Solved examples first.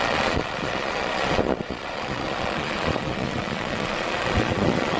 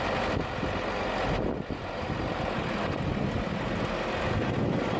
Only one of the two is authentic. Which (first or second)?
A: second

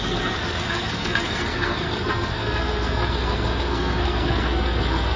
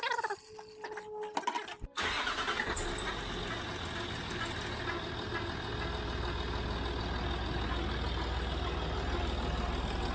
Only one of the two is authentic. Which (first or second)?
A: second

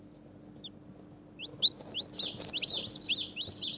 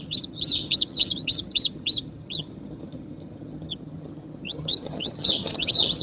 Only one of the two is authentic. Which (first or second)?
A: first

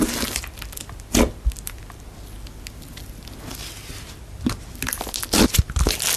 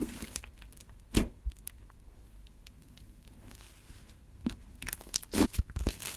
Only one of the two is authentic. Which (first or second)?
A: first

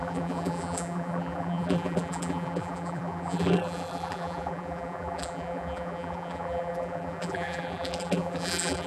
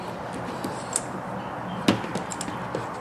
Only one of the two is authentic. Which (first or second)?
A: second